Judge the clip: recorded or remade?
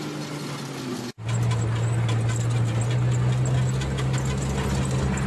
recorded